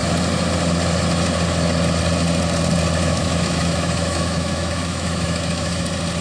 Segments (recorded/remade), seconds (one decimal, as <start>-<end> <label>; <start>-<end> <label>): 0.0-3.0 recorded; 3.0-5.8 remade; 5.8-6.2 recorded